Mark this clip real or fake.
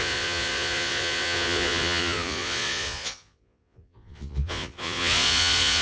fake